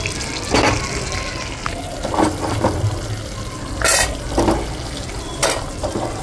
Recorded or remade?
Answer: recorded